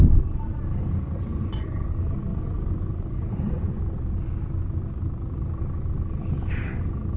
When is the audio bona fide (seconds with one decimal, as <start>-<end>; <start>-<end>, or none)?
0.0-1.3; 1.9-2.3; 3.8-7.2